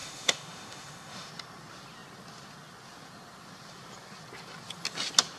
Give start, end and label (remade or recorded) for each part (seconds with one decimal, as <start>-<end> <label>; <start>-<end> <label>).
0.0-1.3 remade; 1.3-5.4 recorded